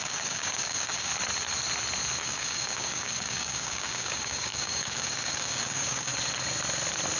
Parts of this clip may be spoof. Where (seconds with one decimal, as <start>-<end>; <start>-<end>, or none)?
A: 0.0-1.1; 2.2-6.1